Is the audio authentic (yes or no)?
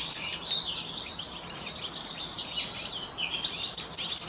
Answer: yes